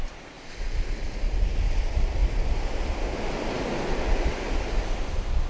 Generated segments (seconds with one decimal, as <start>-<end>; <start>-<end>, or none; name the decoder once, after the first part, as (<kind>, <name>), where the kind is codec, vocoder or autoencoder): none

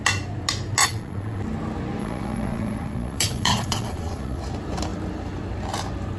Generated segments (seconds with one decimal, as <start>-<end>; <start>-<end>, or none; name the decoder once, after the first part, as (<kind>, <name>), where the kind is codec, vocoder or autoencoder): 0.8-1.4 (vocoder, Vocos); 2.0-4.4

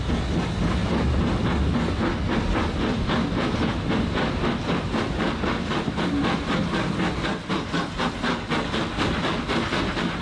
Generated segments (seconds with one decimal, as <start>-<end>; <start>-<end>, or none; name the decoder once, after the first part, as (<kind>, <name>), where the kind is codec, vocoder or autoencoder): none